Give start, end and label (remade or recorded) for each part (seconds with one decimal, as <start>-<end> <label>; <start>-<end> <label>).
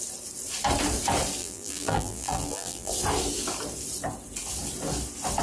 0.0-1.4 recorded; 1.4-2.9 remade; 2.9-5.4 recorded